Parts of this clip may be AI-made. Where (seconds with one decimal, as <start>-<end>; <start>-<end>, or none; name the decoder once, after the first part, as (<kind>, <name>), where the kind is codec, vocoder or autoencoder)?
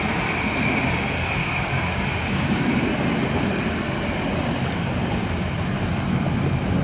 1.4-2.7 (codec, DAC)